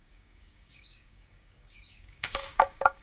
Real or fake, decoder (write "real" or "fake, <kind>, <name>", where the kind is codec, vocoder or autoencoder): fake, codec, DAC